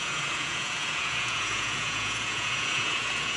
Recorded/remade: remade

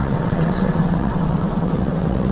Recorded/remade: remade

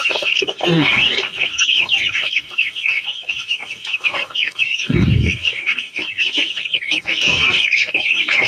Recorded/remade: remade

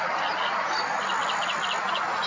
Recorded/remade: recorded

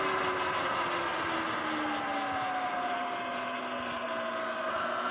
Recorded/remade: recorded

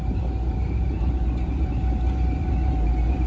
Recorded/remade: remade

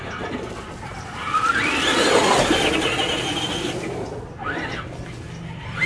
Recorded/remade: recorded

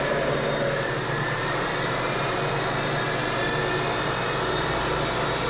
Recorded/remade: recorded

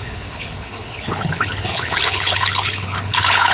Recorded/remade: remade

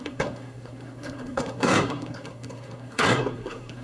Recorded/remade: remade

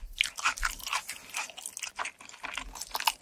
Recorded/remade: recorded